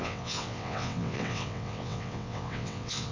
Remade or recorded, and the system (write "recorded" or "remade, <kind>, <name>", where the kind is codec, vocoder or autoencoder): remade, vocoder, WaveNeXt